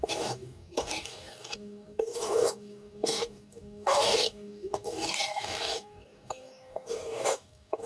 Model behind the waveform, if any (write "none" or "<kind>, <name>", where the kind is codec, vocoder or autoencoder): codec, DAC